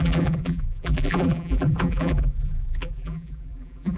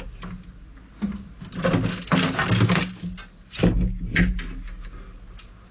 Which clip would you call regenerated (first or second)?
first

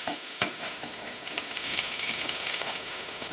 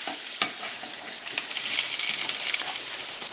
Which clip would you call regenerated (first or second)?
first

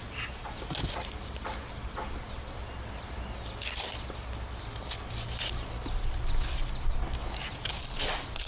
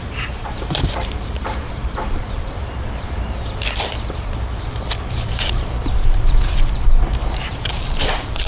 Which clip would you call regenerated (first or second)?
second